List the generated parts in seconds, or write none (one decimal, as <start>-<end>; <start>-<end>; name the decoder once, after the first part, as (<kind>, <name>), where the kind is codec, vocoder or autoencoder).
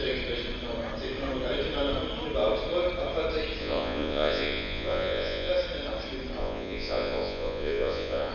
3.6-5.5 (vocoder, Vocos); 6.4-8.3